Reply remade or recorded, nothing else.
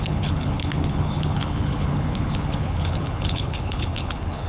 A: remade